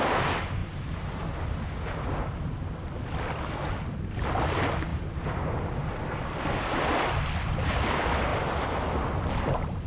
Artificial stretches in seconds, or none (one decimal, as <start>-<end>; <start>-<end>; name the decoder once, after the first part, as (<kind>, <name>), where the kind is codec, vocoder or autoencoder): 0.6-1.8 (vocoder, BigVGAN v2); 4.9-6.2; 8.3-9.3